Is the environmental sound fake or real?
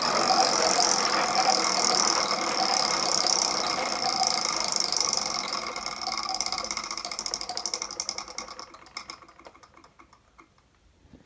real